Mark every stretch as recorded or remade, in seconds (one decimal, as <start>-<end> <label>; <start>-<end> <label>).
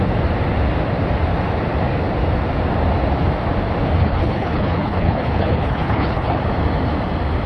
0.0-4.0 recorded; 4.0-6.4 remade; 6.4-7.5 recorded